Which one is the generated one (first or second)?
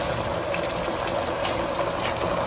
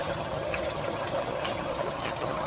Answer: second